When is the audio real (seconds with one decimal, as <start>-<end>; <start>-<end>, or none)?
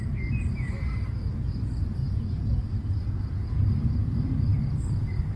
0.0-2.0; 3.5-5.4